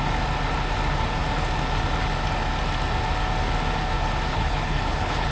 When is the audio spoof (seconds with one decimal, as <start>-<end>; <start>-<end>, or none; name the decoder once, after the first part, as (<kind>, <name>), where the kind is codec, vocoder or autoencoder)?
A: 4.3-5.3 (codec, HILCodec)